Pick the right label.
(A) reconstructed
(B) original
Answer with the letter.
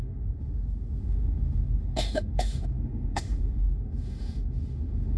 A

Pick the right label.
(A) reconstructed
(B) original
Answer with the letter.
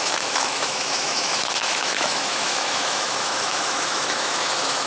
A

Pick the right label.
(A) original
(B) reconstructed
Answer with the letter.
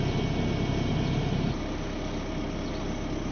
A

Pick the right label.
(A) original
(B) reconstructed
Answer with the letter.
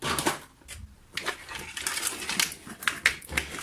A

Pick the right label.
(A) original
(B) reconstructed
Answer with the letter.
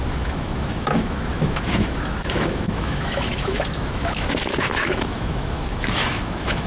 B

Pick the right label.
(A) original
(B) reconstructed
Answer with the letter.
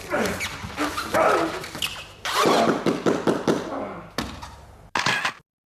A